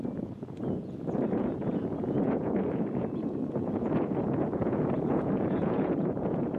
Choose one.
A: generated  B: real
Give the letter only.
A